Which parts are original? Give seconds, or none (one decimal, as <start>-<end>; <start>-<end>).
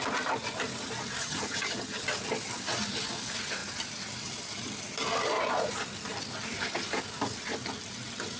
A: 0.0-1.2; 2.0-8.4